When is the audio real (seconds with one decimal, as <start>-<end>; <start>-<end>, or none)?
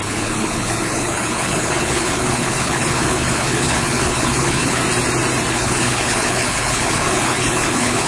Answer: 4.8-5.5